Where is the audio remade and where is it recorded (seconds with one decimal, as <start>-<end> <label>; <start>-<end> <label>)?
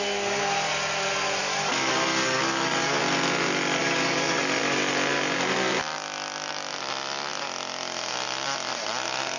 0.0-1.4 recorded; 1.4-3.0 remade; 3.0-3.8 recorded; 3.8-4.8 remade; 4.8-9.4 recorded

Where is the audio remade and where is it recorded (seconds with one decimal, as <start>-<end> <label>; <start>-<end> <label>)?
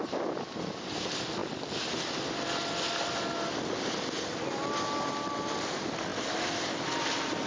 0.0-7.5 recorded